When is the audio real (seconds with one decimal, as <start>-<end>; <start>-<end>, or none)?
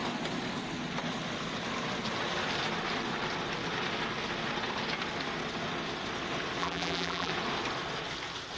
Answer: 0.0-6.6; 7.3-8.6